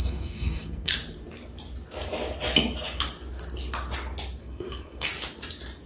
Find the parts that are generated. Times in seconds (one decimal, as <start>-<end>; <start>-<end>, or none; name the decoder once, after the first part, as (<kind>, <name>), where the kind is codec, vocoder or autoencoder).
0.0-0.9 (codec, SNAC); 4.4-5.1